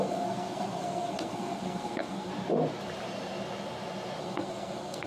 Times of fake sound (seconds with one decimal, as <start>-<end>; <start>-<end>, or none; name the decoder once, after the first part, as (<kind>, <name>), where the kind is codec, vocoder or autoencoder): 0.0-2.3 (codec, SNAC); 4.2-5.1